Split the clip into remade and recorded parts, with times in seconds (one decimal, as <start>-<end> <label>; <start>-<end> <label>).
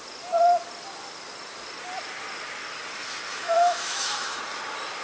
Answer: 0.0-3.3 recorded; 3.3-4.4 remade; 4.4-5.0 recorded